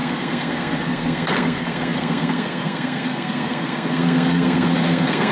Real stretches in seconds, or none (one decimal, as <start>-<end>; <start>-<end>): none